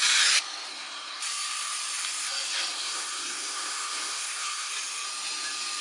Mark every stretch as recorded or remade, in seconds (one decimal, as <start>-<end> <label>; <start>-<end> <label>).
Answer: 0.0-0.7 recorded; 0.7-1.2 remade; 1.2-2.7 recorded; 2.7-4.7 remade; 4.7-5.8 recorded